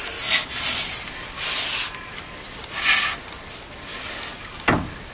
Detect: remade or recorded recorded